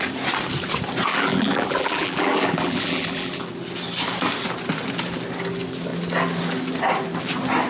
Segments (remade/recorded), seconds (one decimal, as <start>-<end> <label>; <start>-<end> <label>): 0.0-1.1 recorded; 1.1-3.4 remade; 3.4-7.7 recorded